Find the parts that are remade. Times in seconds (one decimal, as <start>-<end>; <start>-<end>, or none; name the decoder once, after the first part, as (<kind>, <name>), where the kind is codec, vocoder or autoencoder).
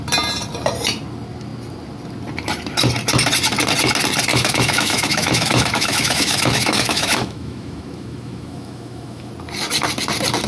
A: 4.3-9.3 (autoencoder, DAC-VAE)